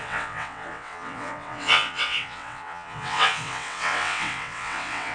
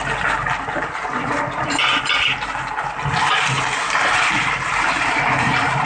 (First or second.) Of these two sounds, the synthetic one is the first